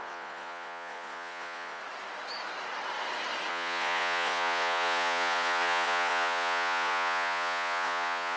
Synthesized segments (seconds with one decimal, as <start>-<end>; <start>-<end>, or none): 0.0-1.8; 3.5-8.4